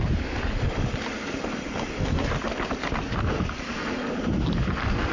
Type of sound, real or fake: real